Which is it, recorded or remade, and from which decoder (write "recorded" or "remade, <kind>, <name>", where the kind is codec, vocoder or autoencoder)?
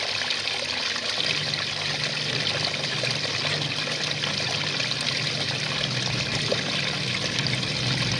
recorded